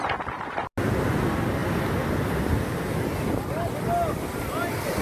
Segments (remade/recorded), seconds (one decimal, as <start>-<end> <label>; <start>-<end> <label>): 0.0-5.0 recorded